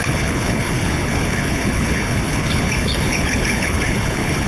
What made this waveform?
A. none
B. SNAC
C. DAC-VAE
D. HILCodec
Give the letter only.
D